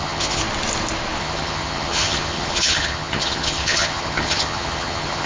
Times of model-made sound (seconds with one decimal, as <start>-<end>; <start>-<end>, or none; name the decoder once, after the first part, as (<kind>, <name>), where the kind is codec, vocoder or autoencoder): 0.0-0.4 (vocoder, HiFi-GAN); 1.2-5.3

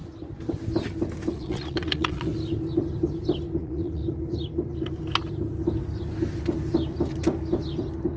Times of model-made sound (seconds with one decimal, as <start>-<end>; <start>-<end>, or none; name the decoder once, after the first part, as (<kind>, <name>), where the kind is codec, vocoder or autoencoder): 1.3-2.3 (vocoder, Vocos); 3.6-4.0

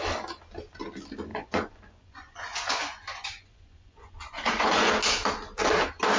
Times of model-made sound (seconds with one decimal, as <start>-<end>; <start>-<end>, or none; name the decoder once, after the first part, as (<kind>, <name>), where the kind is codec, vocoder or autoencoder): 1.3-4.9 (vocoder, Vocos)

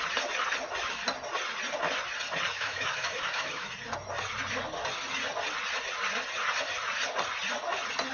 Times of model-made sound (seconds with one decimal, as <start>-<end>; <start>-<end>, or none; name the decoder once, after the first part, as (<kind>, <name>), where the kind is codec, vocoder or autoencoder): 2.5-3.7 (autoencoder, DAC-VAE)

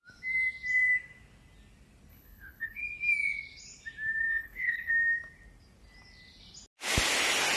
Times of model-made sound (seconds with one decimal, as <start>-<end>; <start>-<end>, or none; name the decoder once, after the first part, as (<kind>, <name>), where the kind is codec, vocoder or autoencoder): 2.1-2.8 (codec, HILCodec); 4.3-4.9

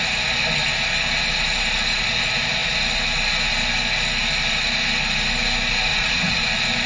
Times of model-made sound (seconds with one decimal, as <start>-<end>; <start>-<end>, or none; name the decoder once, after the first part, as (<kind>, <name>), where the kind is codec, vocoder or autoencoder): 5.9-6.4 (vocoder, Vocos)

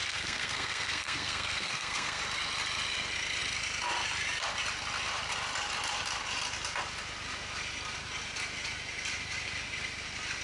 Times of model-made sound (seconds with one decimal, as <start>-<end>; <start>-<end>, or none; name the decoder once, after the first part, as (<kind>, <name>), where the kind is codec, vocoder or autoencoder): 0.0-2.2 (codec, SNAC)

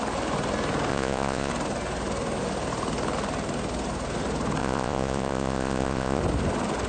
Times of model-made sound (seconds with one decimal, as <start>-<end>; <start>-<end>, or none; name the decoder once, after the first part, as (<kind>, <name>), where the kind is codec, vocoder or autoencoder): 0.9-1.5 (vocoder, Vocos); 4.6-6.2